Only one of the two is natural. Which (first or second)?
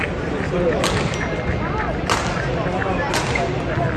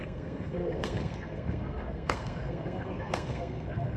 first